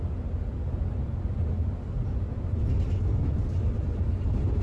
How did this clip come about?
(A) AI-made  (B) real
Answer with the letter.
B